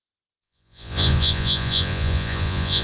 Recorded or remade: remade